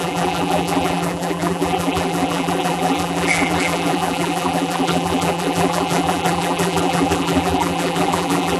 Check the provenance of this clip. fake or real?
fake